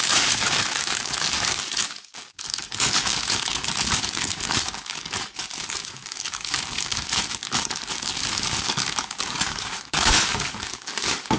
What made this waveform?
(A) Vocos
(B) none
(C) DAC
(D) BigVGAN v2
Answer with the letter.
C